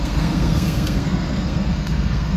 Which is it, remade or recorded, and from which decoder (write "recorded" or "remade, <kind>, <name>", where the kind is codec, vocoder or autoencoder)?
remade, codec, SNAC